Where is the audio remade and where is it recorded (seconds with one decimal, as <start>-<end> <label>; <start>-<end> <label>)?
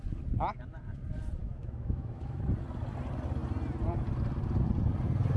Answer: 0.0-1.4 recorded; 1.4-2.4 remade; 2.4-5.4 recorded